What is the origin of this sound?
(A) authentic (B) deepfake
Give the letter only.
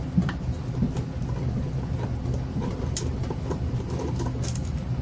A